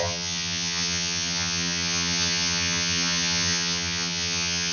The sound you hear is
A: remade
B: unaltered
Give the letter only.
A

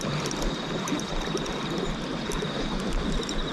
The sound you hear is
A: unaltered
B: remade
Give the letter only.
A